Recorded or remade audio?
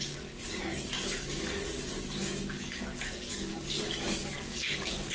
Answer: remade